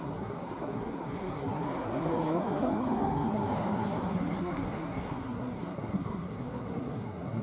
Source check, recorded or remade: remade